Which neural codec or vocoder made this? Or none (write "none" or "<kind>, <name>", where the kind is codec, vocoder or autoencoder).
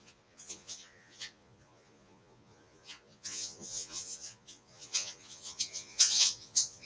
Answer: vocoder, Vocos